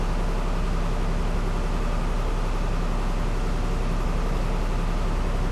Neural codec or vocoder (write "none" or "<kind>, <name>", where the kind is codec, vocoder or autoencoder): none